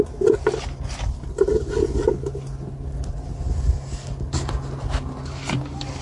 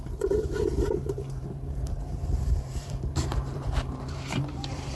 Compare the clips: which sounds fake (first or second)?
second